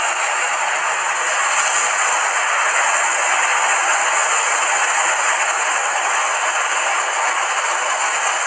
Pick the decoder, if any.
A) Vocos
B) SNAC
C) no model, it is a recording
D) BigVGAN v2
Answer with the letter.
C